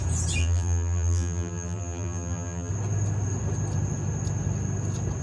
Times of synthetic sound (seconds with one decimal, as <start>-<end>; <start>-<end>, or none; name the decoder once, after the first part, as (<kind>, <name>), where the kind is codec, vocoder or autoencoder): 0.4-2.7 (vocoder, BigVGAN v2)